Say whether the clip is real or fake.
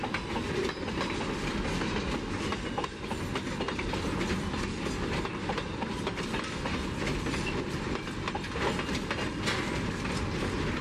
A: real